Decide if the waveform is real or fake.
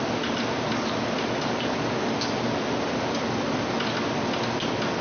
real